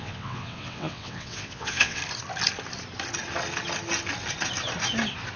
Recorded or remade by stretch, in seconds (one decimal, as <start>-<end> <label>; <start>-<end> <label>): 0.0-2.0 remade; 2.0-5.4 recorded

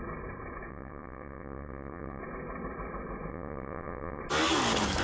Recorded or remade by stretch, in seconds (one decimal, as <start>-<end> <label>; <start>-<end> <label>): 0.0-0.7 recorded; 0.7-2.2 remade; 2.2-3.3 recorded; 3.3-4.2 remade; 4.2-5.0 recorded